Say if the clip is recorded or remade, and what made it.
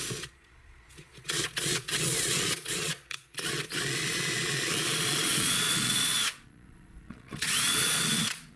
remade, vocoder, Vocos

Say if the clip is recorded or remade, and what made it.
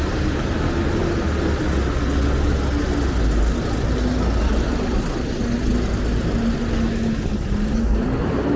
recorded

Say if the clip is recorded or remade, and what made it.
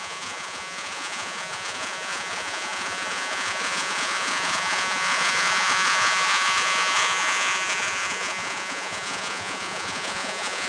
remade, vocoder, Vocos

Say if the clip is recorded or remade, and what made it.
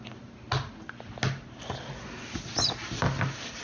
recorded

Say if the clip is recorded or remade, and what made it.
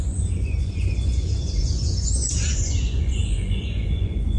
remade, vocoder, Vocos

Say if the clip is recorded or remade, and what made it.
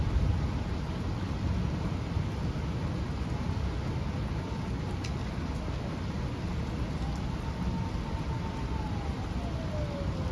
recorded